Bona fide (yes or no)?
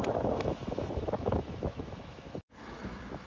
no